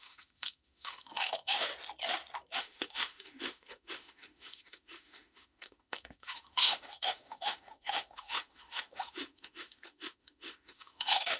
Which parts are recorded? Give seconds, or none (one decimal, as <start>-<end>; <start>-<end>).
1.7-2.6